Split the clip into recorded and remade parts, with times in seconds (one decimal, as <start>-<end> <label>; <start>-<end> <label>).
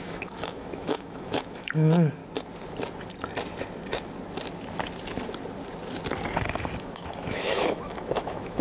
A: 0.0-2.2 remade; 2.2-6.8 recorded; 6.8-8.6 remade